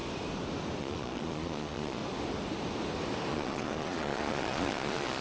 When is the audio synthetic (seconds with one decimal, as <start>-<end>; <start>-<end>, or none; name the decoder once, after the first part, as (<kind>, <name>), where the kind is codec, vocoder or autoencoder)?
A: 0.8-2.0 (vocoder, Vocos); 3.3-5.2